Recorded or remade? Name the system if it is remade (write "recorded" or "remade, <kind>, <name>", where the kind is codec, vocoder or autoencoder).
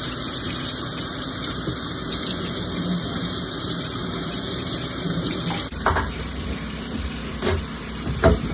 remade, vocoder, BigVGAN v2